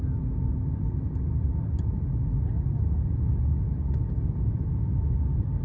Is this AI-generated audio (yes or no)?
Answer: no